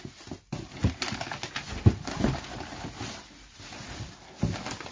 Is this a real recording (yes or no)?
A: yes